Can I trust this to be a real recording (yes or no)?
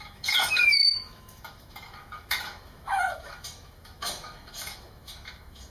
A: no